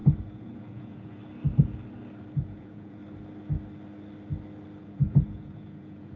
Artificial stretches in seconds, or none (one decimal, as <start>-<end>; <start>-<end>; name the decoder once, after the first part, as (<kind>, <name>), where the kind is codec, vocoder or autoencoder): 0.0-1.2 (vocoder, Vocos); 2.3-3.0; 4.8-6.2